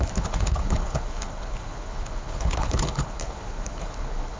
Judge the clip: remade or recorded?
remade